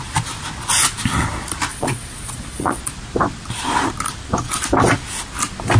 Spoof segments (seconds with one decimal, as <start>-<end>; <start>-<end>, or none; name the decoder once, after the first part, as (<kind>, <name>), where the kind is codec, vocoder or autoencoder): 1.7-2.8 (vocoder, Vocos)